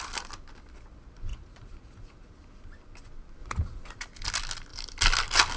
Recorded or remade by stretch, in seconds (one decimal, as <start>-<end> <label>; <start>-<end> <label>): 0.0-1.3 recorded; 1.3-2.3 remade; 2.3-3.4 recorded; 3.4-4.0 remade; 4.0-5.6 recorded